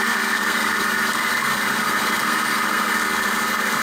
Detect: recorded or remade remade